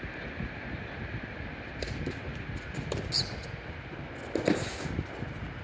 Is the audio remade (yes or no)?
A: no